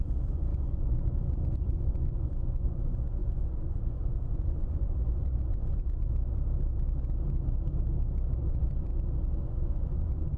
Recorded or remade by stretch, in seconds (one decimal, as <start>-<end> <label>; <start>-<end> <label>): 0.0-5.7 remade; 5.7-8.5 recorded; 8.5-8.9 remade; 8.9-9.4 recorded; 9.4-10.4 remade